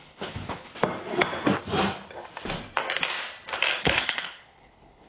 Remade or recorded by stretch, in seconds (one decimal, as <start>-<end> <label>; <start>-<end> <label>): 0.0-0.7 remade; 0.7-3.8 recorded; 3.8-5.1 remade